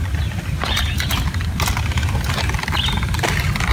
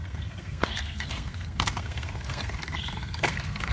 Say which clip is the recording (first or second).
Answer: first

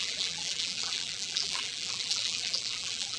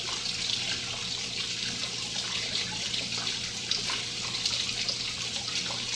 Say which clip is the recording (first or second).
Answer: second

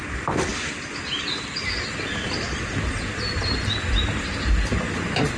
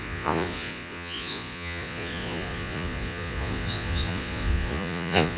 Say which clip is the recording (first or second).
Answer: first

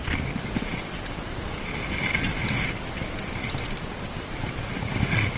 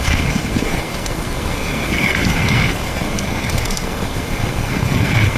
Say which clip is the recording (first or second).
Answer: first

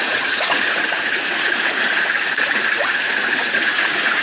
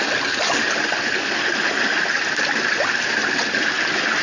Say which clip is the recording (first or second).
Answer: second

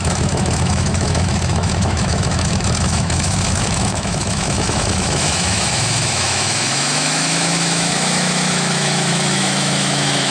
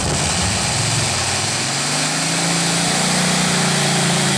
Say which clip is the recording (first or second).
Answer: second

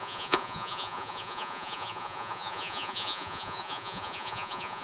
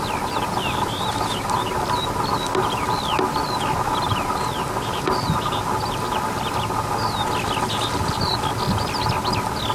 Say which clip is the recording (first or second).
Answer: second